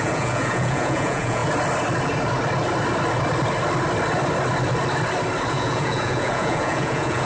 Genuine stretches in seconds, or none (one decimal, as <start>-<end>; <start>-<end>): 1.4-5.5